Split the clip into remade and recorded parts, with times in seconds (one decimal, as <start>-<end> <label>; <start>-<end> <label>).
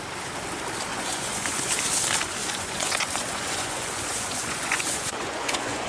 0.0-0.9 recorded; 0.9-1.7 remade; 1.7-2.4 recorded; 2.4-5.9 remade